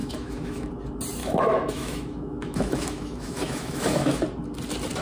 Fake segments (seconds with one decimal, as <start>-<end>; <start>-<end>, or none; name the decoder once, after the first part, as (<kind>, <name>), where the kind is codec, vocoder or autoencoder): 0.0-0.7 (autoencoder, DAC-VAE); 1.2-4.2